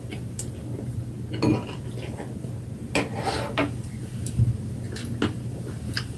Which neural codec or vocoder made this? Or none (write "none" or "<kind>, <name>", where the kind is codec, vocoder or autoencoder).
none